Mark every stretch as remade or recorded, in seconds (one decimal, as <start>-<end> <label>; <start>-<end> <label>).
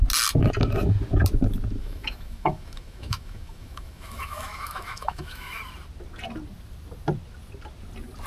0.0-1.8 recorded; 1.8-5.6 remade; 5.6-8.3 recorded